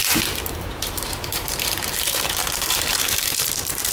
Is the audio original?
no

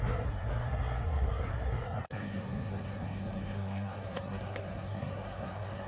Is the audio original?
no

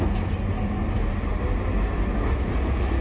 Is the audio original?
yes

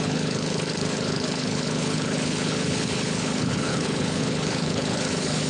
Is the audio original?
no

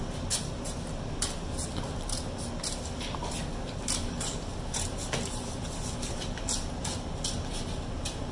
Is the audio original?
yes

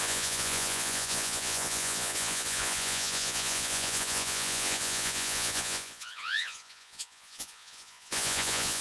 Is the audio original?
no